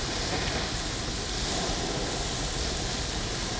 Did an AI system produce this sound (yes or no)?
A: no